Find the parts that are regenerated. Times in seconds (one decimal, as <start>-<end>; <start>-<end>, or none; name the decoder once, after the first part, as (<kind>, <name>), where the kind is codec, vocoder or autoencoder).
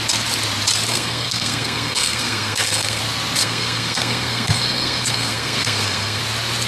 0.9-3.0 (codec, SNAC); 3.4-6.2